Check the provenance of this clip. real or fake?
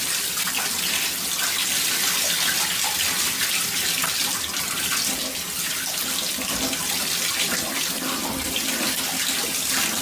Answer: real